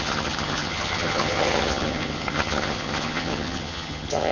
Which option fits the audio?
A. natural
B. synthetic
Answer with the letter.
B